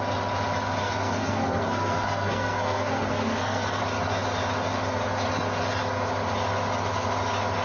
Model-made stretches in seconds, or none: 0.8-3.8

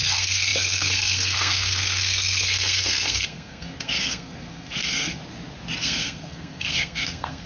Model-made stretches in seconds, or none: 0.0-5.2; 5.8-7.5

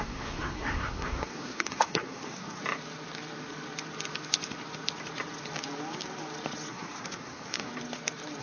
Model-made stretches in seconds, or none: 0.0-2.6; 6.7-7.7

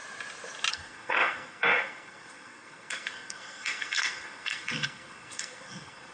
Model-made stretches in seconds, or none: 0.7-6.1

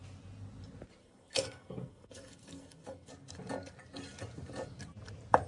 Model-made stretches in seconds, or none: 1.0-3.1

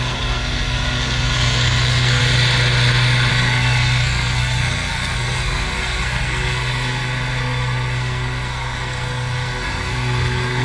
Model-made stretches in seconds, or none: 0.0-2.2; 3.3-10.6

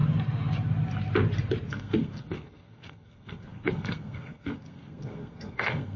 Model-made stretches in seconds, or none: 1.7-6.0